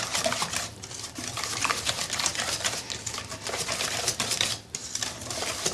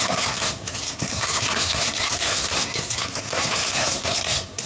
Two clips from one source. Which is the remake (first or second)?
second